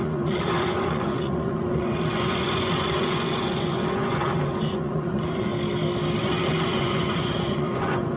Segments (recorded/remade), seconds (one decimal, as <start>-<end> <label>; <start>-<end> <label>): 0.0-5.5 remade; 5.5-6.2 recorded; 6.2-8.2 remade